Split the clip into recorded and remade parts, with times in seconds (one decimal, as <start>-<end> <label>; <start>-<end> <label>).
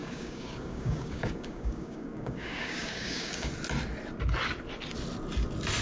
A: 0.0-3.5 remade; 3.5-5.8 recorded